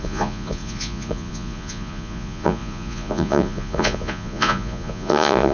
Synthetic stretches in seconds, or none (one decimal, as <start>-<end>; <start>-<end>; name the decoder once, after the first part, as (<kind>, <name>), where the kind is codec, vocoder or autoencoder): 0.0-5.5 (vocoder, Vocos)